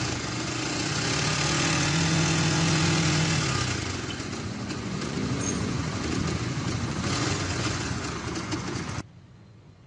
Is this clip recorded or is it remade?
remade